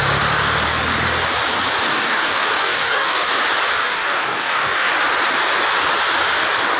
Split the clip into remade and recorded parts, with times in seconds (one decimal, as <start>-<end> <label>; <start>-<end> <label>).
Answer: 0.0-1.9 recorded; 1.9-3.3 remade; 3.3-3.8 recorded; 3.8-4.9 remade; 4.9-6.8 recorded